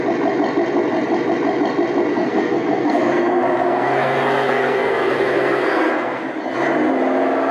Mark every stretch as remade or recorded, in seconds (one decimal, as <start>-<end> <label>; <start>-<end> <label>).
0.0-2.1 recorded; 2.1-6.3 remade; 6.3-7.5 recorded